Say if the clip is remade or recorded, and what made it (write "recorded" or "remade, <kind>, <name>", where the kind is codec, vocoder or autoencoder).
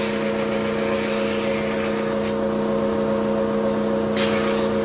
recorded